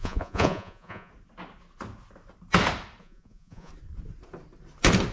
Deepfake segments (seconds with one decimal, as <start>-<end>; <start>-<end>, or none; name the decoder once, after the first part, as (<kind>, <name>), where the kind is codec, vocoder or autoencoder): 0.0-1.1 (vocoder, Vocos); 3.0-3.7